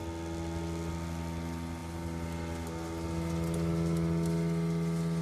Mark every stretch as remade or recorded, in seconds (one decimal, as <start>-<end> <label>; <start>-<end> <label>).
0.0-5.2 recorded